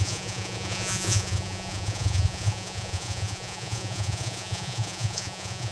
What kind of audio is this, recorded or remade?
remade